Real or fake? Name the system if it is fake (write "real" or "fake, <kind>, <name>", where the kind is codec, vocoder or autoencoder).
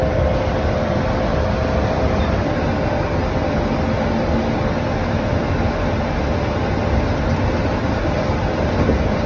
real